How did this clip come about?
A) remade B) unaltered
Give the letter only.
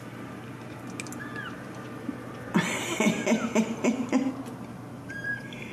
B